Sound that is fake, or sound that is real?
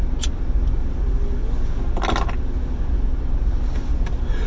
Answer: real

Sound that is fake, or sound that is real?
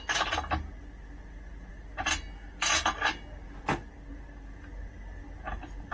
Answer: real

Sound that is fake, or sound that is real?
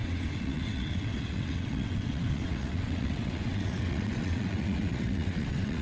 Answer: fake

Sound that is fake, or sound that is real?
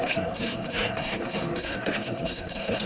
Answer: fake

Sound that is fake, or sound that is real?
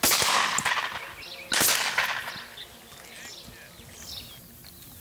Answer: real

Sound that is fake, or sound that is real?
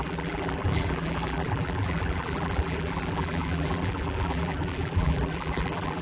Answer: fake